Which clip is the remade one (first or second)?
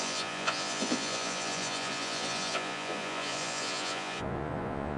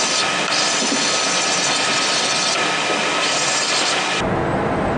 first